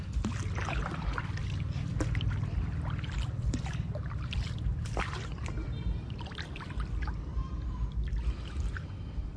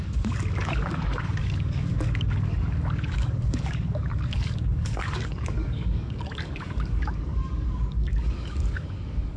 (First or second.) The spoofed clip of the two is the second